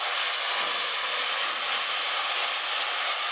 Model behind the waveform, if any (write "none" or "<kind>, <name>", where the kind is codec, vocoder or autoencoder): none